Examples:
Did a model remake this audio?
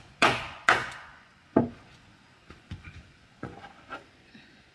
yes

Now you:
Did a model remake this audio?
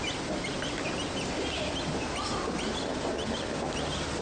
no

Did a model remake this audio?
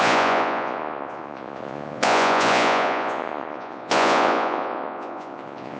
yes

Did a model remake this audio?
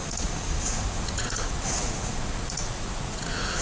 yes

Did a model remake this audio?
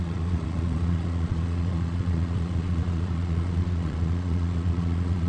yes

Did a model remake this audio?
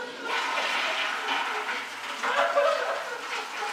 no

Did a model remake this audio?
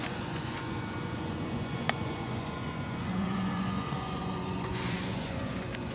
yes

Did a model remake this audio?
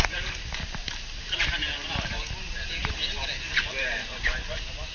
no